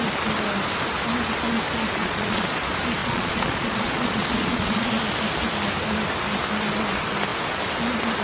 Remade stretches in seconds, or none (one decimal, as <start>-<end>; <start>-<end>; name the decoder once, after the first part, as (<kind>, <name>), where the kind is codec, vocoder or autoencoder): 2.0-2.6 (vocoder, Vocos); 3.0-5.0